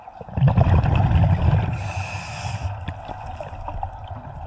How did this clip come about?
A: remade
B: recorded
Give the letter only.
B